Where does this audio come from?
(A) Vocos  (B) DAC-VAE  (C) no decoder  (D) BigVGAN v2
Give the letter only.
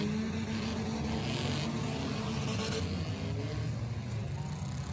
C